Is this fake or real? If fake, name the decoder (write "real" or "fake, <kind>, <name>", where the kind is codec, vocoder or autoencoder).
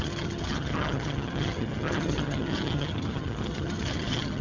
fake, vocoder, HiFi-GAN